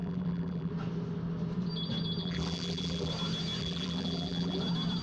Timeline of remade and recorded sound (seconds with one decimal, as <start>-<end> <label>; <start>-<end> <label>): 0.0-0.7 remade; 0.7-2.2 recorded; 2.2-3.1 remade; 3.1-3.6 recorded; 3.6-4.6 remade; 4.6-5.0 recorded